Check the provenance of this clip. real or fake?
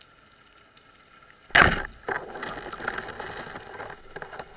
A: real